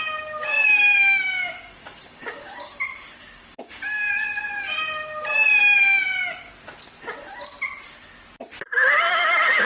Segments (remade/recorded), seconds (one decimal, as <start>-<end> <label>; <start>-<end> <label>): 0.0-4.0 remade; 4.0-9.1 recorded; 9.1-9.6 remade